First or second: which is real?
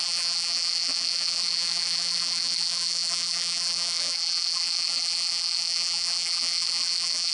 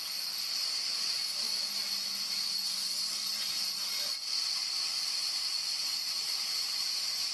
second